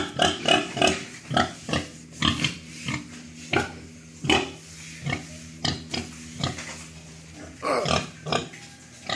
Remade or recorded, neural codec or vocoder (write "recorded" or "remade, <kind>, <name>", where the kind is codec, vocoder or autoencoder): recorded